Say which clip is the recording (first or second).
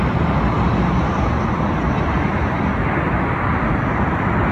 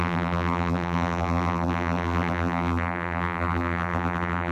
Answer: first